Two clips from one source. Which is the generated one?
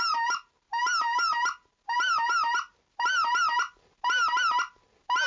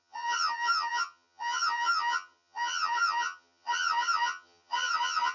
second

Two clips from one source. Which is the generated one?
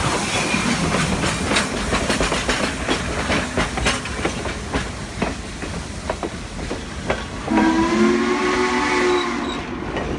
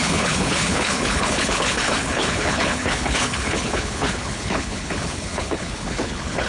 second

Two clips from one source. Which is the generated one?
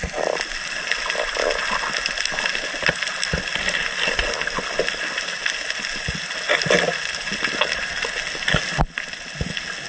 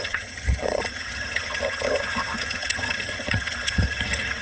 second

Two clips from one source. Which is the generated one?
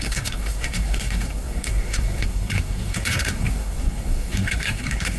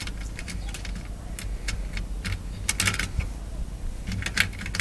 first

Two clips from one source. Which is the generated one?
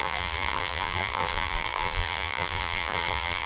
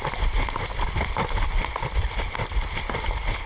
first